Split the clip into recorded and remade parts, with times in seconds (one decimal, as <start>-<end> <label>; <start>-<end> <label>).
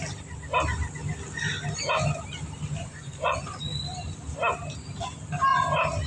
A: 0.0-2.8 recorded; 2.8-3.6 remade; 3.6-6.1 recorded